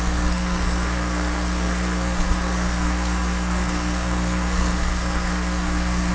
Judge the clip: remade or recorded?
remade